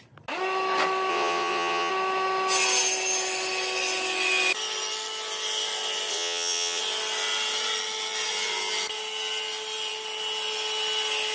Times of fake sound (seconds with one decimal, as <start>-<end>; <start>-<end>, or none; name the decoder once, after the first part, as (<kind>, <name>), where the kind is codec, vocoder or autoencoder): 1.1-1.9 (vocoder, WaveNeXt); 6.1-6.8